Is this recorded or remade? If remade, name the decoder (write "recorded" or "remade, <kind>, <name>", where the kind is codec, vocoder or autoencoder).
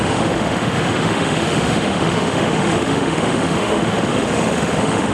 remade, autoencoder, DAC-VAE